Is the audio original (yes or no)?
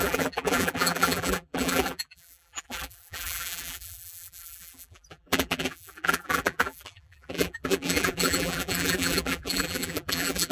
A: no